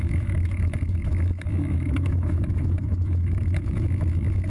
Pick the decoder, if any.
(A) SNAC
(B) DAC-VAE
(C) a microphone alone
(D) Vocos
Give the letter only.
B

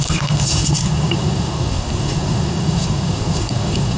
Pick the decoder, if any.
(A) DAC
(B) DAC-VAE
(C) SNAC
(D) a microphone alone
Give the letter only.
C